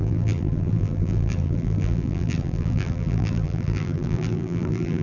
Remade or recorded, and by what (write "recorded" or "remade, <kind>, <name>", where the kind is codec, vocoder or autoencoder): remade, vocoder, BigVGAN v2